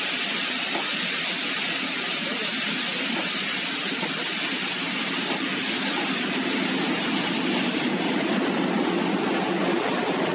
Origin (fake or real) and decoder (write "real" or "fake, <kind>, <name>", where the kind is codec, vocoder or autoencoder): real